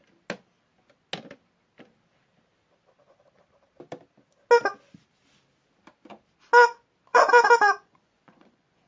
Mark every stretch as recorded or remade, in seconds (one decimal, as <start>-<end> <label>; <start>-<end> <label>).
0.0-7.1 recorded; 7.1-8.9 remade